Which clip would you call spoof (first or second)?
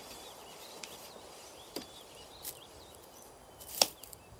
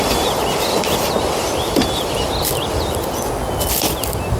first